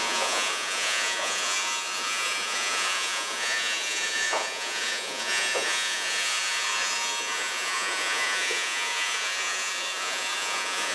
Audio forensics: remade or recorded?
remade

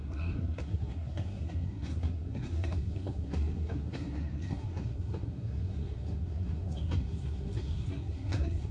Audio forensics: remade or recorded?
remade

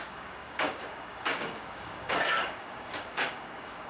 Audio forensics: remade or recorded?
remade